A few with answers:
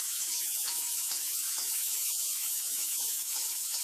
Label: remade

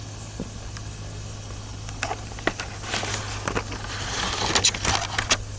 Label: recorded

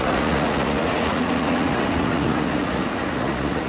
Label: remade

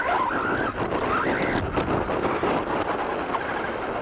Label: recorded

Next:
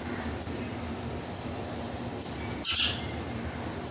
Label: recorded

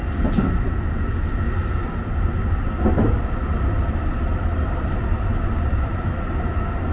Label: recorded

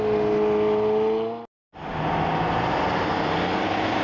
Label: recorded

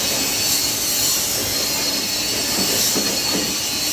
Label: recorded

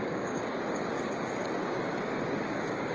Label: remade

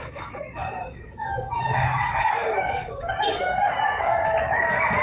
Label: remade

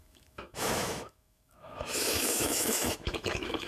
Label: remade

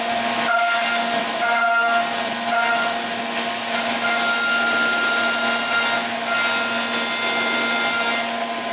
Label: recorded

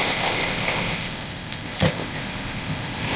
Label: remade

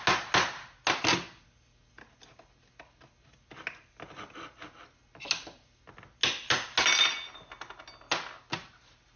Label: recorded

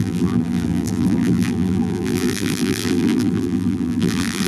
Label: remade